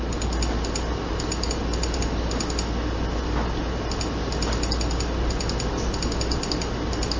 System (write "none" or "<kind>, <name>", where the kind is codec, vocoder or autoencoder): none